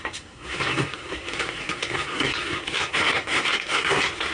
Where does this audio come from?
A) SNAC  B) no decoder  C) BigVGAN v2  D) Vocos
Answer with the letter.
A